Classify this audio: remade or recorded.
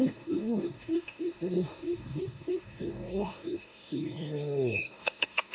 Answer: remade